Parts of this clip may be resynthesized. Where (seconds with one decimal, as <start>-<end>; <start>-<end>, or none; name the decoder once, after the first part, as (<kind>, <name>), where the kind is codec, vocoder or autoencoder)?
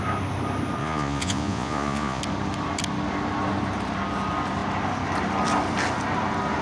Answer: 0.8-2.2 (vocoder, Vocos)